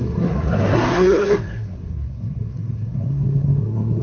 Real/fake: fake